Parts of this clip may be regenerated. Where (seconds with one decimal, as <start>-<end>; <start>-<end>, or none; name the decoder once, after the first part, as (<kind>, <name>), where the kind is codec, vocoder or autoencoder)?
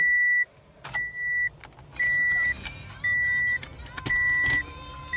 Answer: none